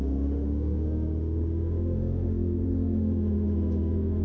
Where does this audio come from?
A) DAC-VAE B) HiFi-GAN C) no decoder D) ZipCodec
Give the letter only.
A